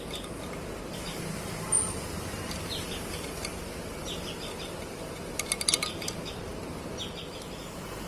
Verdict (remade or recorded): recorded